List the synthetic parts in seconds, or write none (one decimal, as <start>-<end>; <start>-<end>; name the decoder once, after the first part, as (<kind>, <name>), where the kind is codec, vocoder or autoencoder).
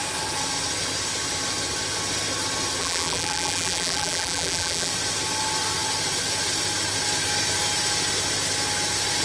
2.8-4.9 (vocoder, BigVGAN v2)